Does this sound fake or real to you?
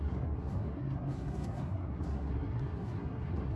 fake